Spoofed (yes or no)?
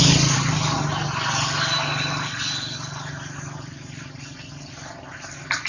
no